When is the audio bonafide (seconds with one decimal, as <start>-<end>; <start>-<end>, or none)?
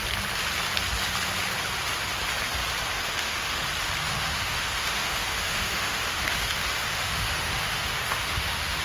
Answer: 0.0-2.9; 3.6-4.0